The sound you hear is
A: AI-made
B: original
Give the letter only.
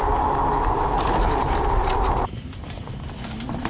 A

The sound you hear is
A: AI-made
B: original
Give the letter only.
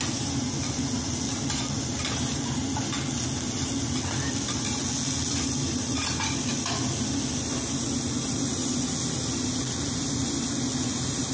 B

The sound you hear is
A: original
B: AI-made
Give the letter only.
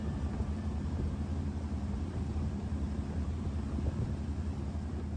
B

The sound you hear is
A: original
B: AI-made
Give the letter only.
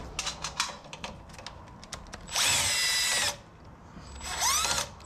A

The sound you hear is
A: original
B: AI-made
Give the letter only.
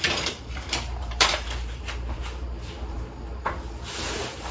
B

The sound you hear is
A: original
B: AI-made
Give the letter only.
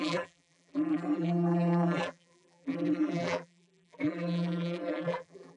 B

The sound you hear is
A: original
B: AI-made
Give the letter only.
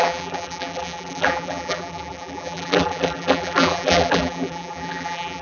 B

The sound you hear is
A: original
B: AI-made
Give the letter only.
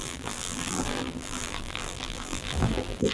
B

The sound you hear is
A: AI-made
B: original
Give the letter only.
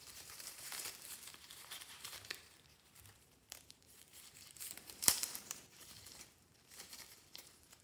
A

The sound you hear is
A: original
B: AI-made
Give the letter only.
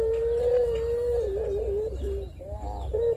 B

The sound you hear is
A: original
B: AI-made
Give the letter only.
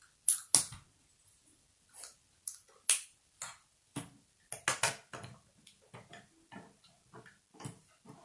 A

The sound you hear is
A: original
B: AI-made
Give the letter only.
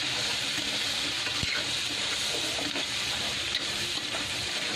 B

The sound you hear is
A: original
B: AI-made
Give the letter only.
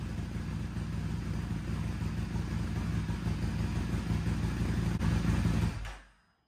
A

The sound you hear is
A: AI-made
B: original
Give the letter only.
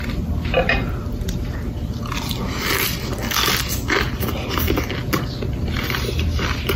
B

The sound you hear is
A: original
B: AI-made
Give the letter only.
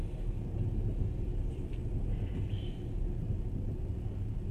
A